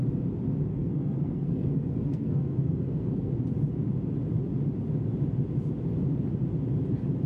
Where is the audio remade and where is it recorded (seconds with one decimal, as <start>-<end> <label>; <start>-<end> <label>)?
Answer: 0.0-0.7 recorded; 0.7-3.3 remade; 3.3-7.3 recorded